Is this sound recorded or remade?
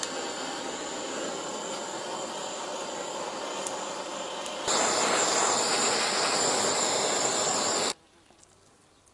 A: recorded